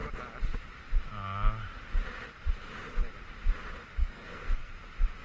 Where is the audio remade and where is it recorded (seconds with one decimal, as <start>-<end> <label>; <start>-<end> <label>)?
0.0-3.9 recorded; 3.9-4.7 remade; 4.7-5.2 recorded